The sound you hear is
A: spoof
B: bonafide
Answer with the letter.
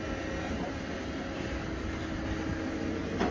B